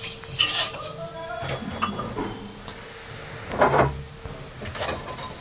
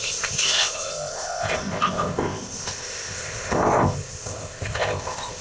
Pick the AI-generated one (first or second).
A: second